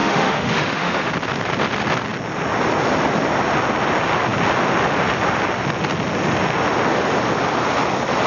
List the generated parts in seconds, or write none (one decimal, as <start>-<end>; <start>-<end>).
0.0-1.1